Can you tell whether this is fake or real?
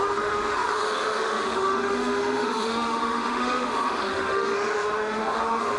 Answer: fake